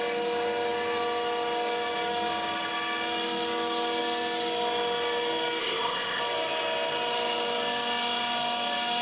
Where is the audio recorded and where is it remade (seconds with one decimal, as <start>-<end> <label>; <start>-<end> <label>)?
0.0-5.6 recorded; 5.6-6.2 remade; 6.2-9.0 recorded